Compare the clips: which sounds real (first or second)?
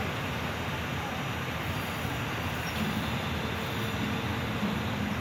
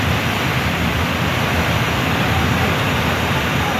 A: first